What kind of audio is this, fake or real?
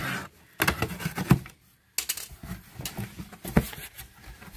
real